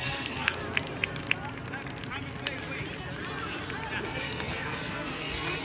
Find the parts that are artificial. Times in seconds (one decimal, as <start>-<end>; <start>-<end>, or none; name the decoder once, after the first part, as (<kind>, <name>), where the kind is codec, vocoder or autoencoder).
0.0-0.6 (codec, SNAC); 4.0-5.6